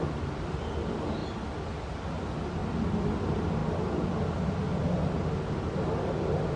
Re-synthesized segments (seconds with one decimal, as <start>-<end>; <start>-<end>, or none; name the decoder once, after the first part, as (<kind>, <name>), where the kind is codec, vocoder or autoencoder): none